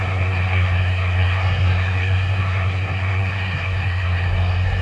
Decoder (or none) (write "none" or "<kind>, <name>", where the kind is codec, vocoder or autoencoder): codec, SNAC